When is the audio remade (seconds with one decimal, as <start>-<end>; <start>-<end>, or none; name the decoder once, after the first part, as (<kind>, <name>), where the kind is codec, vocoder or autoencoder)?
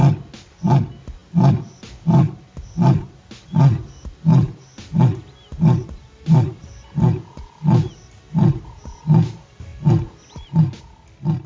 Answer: none